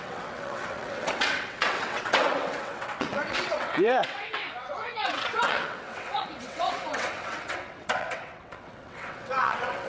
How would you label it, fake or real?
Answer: fake